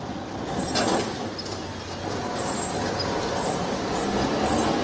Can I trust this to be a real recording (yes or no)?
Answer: yes